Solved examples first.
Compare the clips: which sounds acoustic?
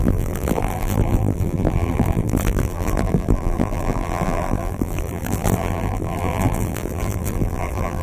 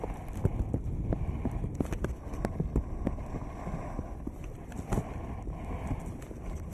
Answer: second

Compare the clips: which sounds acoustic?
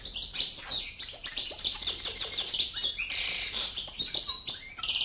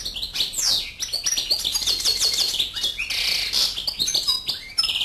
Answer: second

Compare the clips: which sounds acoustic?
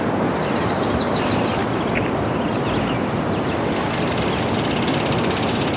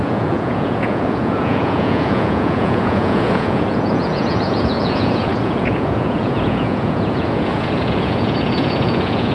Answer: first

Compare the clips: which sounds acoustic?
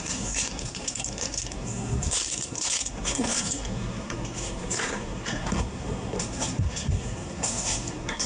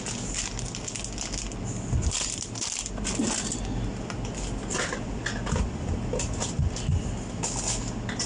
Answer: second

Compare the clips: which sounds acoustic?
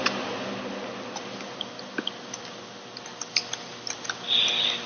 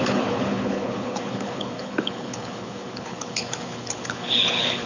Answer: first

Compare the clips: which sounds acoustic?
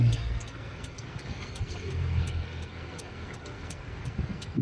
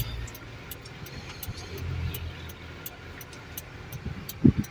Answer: second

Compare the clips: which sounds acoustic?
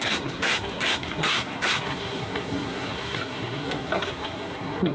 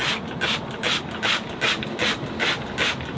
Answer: second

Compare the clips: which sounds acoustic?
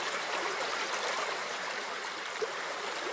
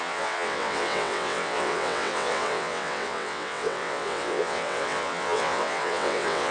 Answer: first